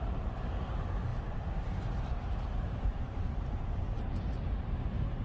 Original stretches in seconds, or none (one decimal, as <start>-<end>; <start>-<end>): none